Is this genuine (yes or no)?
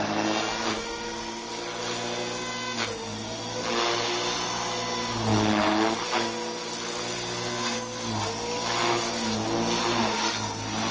yes